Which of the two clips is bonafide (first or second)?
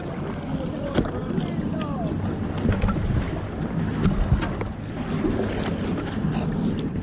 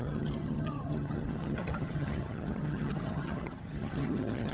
first